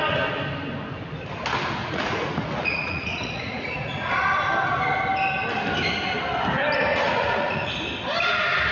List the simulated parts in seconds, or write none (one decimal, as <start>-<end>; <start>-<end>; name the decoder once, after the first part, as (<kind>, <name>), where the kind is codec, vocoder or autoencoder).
1.8-4.5 (vocoder, Vocos); 6.9-7.7